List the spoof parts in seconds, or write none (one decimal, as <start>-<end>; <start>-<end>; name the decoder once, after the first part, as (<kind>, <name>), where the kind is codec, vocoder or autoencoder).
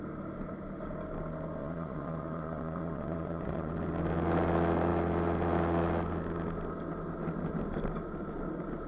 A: 1.6-3.7 (vocoder, Vocos)